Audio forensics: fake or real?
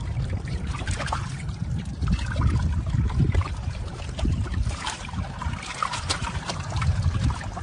fake